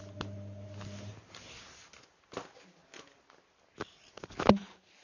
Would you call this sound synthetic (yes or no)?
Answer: no